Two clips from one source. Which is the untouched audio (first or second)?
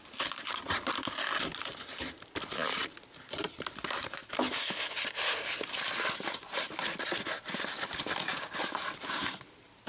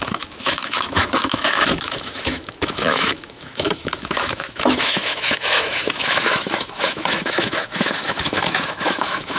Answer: first